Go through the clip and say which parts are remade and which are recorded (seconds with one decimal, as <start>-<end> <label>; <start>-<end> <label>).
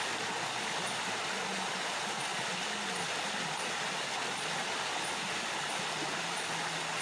0.0-7.0 recorded